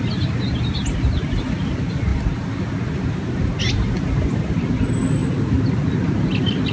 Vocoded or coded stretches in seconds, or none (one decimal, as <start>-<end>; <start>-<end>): none